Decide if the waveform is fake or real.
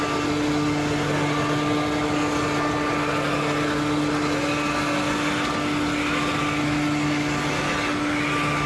real